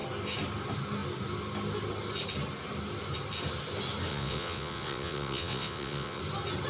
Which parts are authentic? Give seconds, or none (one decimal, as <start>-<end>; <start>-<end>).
0.0-4.1; 6.2-6.7

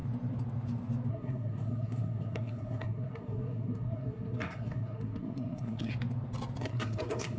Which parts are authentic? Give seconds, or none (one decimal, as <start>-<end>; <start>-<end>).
0.0-1.1; 5.9-6.6